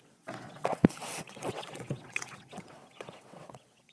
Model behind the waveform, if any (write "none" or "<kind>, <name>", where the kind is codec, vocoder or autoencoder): vocoder, WaveNeXt